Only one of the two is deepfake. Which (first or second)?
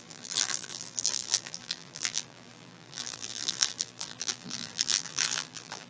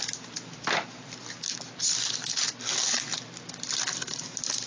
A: first